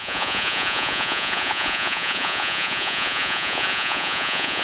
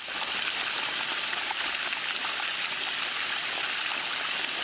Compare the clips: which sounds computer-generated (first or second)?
first